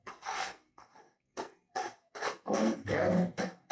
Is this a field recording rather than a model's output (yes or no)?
no